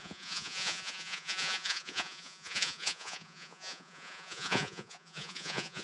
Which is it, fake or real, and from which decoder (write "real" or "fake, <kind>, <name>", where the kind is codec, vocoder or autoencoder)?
fake, vocoder, Vocos